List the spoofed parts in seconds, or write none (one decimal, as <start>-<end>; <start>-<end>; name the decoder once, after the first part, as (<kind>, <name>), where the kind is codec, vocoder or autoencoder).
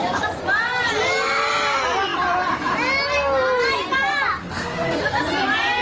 4.4-5.0 (codec, SNAC)